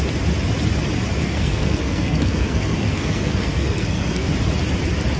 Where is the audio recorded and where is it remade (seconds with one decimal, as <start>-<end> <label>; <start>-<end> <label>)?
0.0-1.2 recorded; 1.2-4.3 remade; 4.3-5.2 recorded